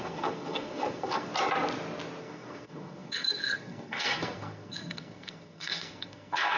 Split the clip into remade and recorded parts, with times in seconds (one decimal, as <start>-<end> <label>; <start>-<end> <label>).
0.0-1.3 remade; 1.3-2.2 recorded; 2.2-6.6 remade